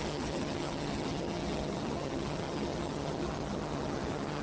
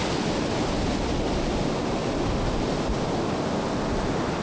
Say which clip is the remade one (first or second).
first